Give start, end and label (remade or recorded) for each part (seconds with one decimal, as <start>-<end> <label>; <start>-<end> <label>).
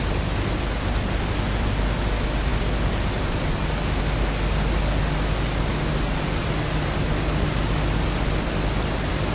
0.0-9.3 recorded